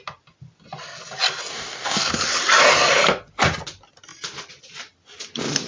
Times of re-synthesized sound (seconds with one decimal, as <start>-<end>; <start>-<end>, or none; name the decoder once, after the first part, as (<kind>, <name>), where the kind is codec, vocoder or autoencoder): 1.5-2.1 (codec, DAC)